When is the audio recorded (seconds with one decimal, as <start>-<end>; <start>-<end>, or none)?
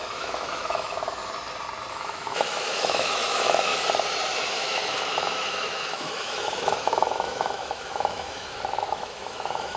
1.2-1.9; 3.7-4.5